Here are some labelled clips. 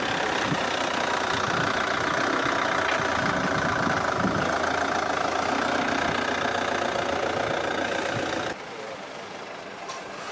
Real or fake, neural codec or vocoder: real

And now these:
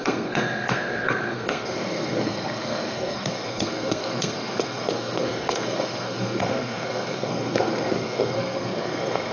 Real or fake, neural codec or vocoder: fake, codec, SNAC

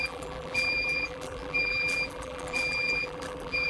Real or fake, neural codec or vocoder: fake, vocoder, BigVGAN v2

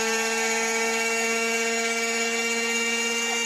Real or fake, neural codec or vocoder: fake, codec, DAC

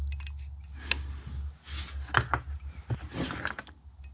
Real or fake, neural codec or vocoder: real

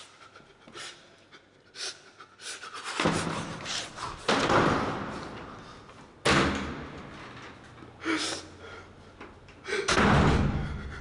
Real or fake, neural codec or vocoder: real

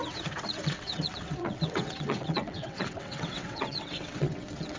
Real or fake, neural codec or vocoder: fake, vocoder, WaveNeXt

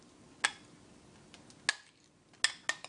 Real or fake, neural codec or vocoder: real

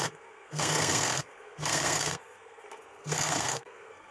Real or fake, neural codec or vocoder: fake, codec, SNAC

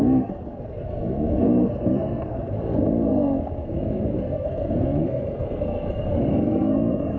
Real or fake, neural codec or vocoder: fake, codec, SNAC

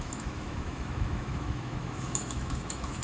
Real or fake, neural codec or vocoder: fake, autoencoder, DAC-VAE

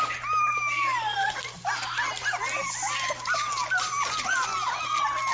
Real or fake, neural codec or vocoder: real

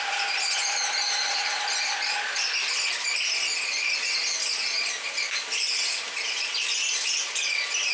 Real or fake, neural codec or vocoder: real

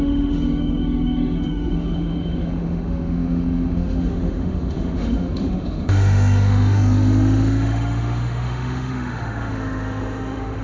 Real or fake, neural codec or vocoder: fake, autoencoder, DAC-VAE